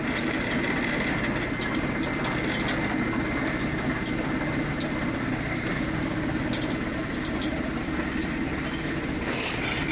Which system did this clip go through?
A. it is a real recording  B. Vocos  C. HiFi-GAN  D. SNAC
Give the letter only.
A